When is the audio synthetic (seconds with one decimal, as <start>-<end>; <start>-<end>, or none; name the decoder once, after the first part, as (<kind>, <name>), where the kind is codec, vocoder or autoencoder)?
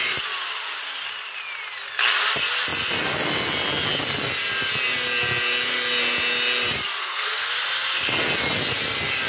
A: 7.0-7.5 (codec, SNAC)